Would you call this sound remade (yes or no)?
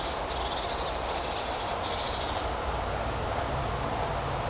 no